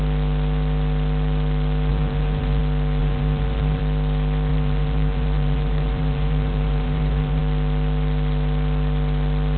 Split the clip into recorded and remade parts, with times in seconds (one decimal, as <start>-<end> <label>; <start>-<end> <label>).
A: 0.0-1.9 recorded; 1.9-2.6 remade; 2.6-3.0 recorded; 3.0-3.8 remade; 3.8-4.5 recorded; 4.5-7.4 remade; 7.4-9.6 recorded